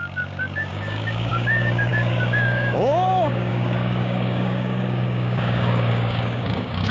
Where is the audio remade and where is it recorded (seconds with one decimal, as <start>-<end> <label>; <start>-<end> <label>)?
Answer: 0.0-6.9 remade